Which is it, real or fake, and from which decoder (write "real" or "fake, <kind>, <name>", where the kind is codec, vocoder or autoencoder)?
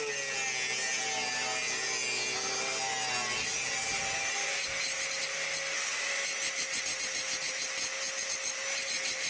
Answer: real